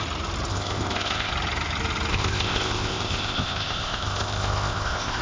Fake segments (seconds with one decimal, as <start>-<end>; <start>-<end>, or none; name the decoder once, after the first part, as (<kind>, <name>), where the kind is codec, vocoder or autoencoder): 0.5-1.3 (codec, ZipCodec); 2.1-5.2